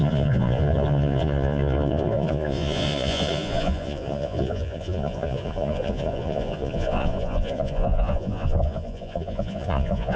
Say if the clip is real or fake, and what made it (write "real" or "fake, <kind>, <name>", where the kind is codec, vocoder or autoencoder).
fake, vocoder, Vocos